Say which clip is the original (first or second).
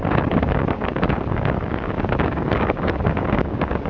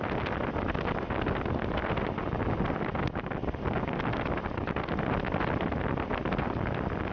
second